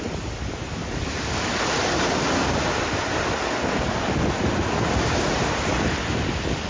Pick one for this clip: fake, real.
real